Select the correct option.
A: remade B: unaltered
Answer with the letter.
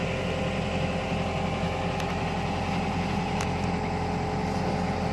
B